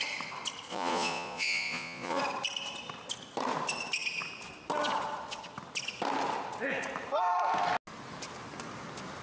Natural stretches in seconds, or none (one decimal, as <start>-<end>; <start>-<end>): 0.0-0.7; 2.2-9.2